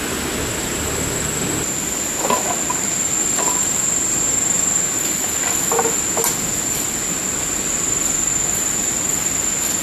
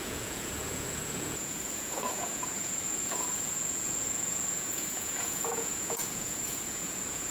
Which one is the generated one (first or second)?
second